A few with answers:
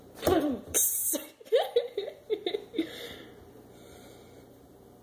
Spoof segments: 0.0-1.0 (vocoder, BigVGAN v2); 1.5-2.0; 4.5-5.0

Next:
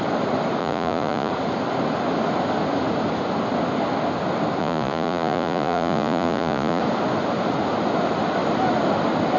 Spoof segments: 0.6-1.3 (vocoder, Vocos); 4.6-6.8

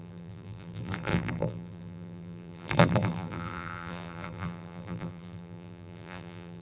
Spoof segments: 0.0-6.6 (vocoder, BigVGAN v2)

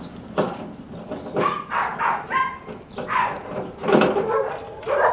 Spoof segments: none

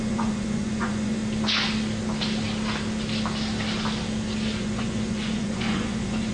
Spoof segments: 0.0-1.2 (vocoder, Vocos); 4.6-6.3